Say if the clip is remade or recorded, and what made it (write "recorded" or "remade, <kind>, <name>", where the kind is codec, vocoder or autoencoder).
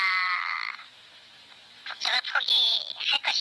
remade, autoencoder, DAC-VAE